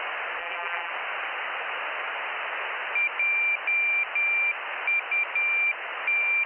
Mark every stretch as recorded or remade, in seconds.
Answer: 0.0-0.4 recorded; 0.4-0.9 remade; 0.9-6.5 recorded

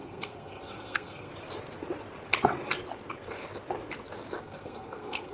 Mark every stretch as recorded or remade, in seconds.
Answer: 0.0-1.3 remade; 1.3-4.4 recorded; 4.4-5.3 remade